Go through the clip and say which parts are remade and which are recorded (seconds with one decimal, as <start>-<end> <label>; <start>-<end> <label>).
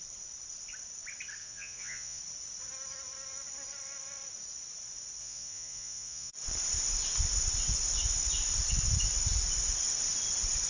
0.0-1.4 recorded; 1.4-2.2 remade; 2.2-5.2 recorded; 5.2-6.3 remade; 6.3-10.7 recorded